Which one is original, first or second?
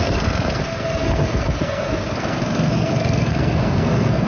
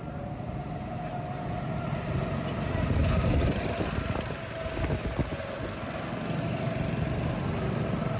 second